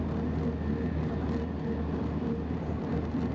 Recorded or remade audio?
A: recorded